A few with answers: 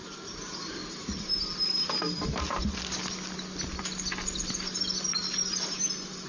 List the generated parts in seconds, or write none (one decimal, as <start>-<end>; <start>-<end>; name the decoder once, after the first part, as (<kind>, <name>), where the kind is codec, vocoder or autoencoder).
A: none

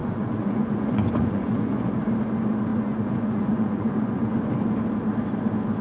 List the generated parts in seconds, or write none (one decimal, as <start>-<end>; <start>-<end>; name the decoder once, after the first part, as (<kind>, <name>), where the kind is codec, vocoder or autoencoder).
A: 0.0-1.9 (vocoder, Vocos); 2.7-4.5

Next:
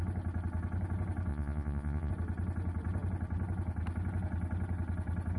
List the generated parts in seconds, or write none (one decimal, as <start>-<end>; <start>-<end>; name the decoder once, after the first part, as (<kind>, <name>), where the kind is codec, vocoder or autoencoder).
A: 1.3-2.1 (vocoder, Vocos)

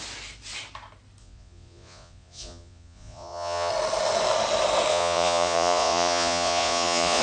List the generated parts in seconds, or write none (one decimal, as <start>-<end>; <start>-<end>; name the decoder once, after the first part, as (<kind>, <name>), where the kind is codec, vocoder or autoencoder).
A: 1.2-3.7 (vocoder, Vocos); 4.9-7.2

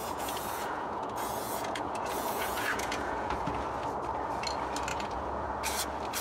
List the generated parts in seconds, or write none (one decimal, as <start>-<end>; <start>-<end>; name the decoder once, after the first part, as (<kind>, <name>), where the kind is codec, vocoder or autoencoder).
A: 0.0-3.5 (vocoder, Vocos); 4.9-5.5

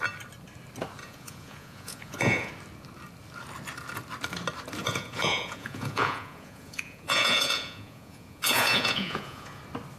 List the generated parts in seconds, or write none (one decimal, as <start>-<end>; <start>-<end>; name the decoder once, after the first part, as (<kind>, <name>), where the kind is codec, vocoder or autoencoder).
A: 1.0-2.5 (vocoder, Vocos); 4.8-9.6